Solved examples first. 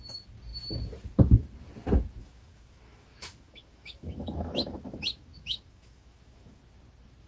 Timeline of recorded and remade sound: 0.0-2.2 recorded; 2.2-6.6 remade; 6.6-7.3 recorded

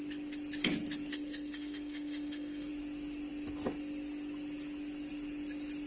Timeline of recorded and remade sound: 0.0-1.1 recorded; 1.1-2.7 remade; 2.7-5.9 recorded

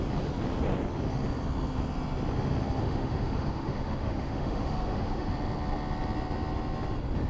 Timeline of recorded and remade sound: 0.0-2.8 recorded; 2.8-5.3 remade; 5.3-7.3 recorded